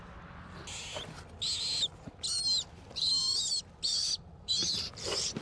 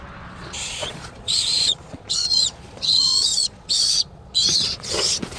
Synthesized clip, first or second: second